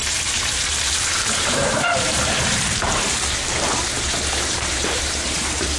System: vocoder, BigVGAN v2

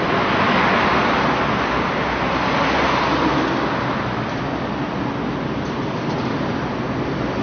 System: none